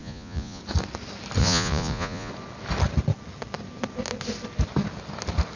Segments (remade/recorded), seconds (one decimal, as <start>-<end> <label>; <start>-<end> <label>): 0.0-0.6 remade; 0.6-1.4 recorded; 1.4-2.3 remade; 2.3-5.6 recorded